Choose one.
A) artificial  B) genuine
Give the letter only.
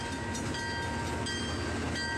B